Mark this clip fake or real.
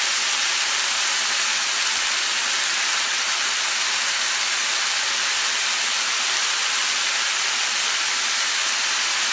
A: real